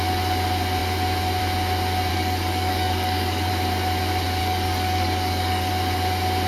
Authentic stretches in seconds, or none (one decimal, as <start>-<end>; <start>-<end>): 0.0-2.1; 3.5-4.4; 5.7-6.5